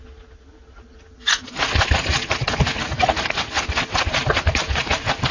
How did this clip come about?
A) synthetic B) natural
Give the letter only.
B